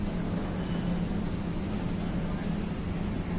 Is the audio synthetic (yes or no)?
yes